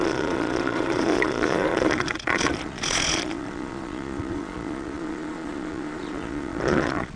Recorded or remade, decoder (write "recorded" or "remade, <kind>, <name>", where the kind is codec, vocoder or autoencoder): remade, vocoder, Vocos